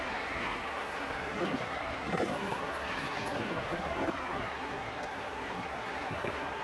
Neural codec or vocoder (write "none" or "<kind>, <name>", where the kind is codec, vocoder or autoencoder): codec, SNAC